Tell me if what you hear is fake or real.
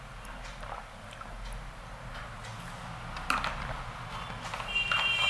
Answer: real